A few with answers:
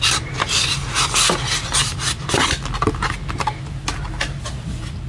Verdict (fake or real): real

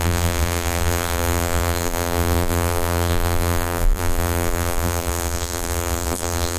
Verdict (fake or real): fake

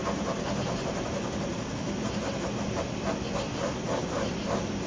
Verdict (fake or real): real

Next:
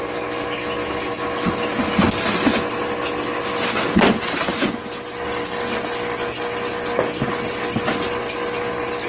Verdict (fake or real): real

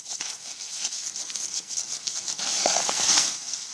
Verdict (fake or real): fake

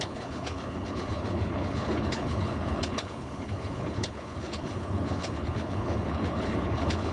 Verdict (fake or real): fake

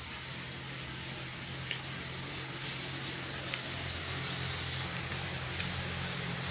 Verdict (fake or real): real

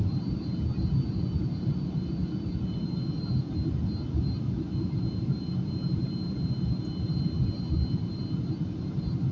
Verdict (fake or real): real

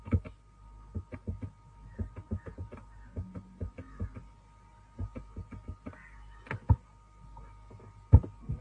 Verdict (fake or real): real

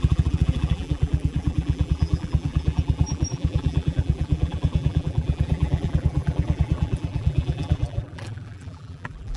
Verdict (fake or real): fake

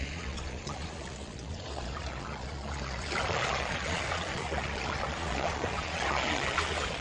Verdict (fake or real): fake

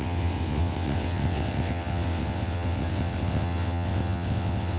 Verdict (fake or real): fake